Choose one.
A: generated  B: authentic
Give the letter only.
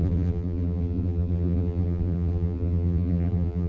A